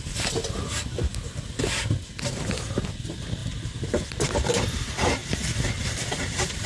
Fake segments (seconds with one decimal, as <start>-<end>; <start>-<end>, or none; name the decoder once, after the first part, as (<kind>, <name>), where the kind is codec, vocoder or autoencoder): 0.0-1.1 (vocoder, BigVGAN v2); 2.2-6.7